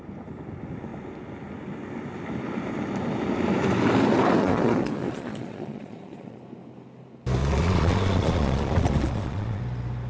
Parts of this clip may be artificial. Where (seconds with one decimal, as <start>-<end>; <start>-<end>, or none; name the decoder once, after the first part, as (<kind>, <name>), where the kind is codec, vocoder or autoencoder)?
4.4-6.4 (vocoder, Vocos); 7.4-9.6